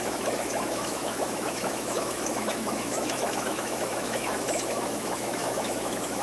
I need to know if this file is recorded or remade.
remade